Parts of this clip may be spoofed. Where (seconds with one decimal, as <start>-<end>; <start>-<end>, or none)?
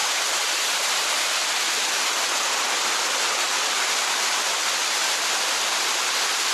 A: 0.0-1.5